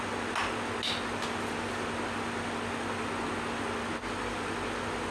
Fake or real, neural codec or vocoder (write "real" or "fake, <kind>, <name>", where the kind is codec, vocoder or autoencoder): real